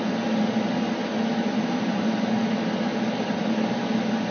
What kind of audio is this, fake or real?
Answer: real